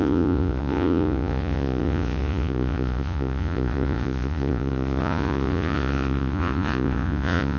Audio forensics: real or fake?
fake